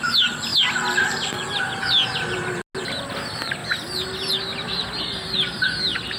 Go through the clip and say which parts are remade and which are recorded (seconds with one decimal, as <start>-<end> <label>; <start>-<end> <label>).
0.0-6.2 recorded